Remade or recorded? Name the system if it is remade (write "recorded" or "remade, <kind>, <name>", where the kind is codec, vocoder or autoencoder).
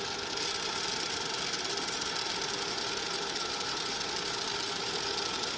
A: recorded